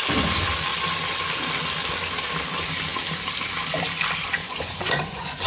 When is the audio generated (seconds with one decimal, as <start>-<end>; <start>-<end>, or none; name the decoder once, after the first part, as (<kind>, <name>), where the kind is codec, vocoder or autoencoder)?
4.4-5.5 (vocoder, Vocos)